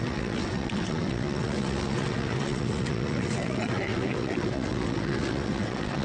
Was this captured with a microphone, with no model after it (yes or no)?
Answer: no